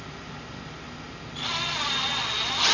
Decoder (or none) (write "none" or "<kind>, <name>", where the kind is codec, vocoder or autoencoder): none